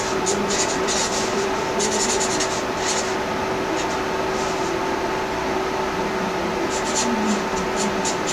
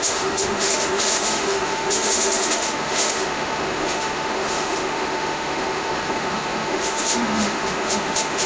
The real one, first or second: first